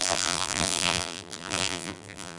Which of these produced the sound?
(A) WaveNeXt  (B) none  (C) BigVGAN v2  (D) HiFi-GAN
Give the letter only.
C